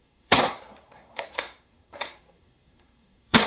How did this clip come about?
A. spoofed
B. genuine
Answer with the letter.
A